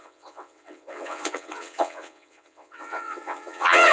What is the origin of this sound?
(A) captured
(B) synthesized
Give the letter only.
B